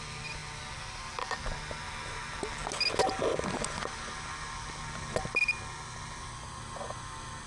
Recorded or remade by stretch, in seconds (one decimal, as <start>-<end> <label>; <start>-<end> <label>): 0.0-7.5 recorded